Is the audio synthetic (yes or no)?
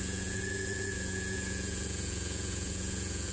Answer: yes